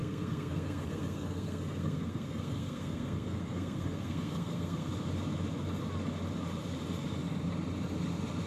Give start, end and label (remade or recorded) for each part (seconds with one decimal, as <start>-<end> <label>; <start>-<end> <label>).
0.0-4.9 remade; 4.9-8.5 recorded